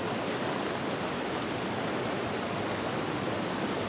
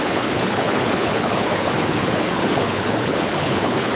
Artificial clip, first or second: second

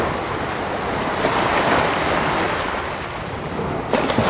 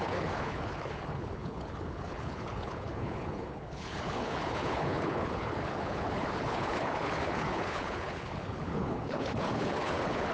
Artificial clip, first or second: second